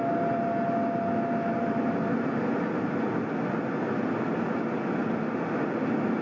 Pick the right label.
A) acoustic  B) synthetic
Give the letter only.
A